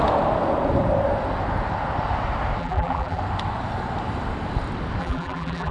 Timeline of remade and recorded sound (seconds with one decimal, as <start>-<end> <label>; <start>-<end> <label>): 0.0-2.6 recorded; 2.6-3.2 remade; 3.2-5.0 recorded; 5.0-5.7 remade